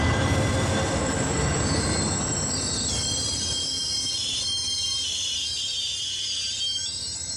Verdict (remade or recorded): remade